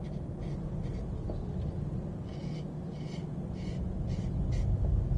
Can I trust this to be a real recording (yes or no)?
yes